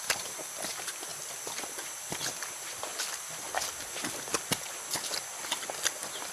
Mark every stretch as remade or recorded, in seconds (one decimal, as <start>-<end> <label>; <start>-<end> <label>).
0.0-6.3 recorded